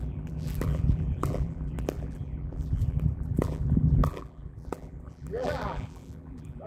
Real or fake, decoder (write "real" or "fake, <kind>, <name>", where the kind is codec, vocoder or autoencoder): fake, vocoder, BigVGAN v2